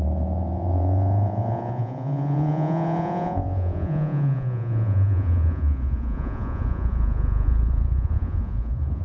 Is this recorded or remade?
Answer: remade